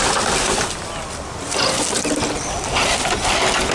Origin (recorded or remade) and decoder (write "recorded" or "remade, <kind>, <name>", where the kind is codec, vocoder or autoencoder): recorded